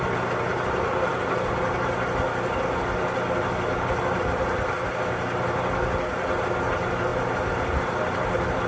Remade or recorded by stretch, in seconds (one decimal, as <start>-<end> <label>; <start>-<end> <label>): 0.0-8.7 recorded